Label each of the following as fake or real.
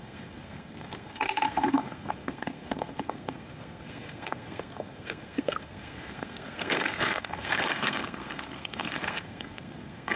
fake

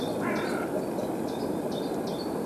real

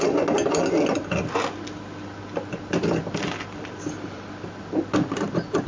real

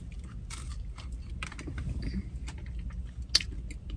real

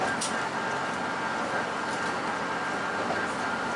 real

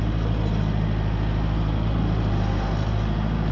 real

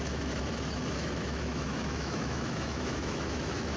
fake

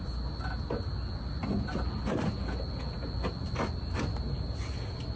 real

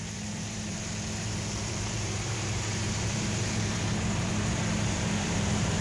fake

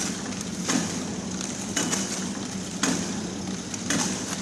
real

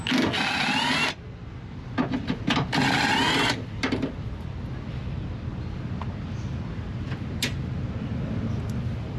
real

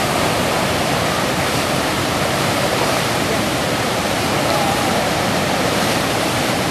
fake